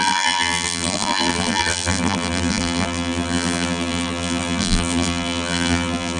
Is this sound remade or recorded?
remade